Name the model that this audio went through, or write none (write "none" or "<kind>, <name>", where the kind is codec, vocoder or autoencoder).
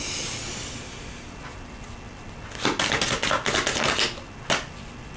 none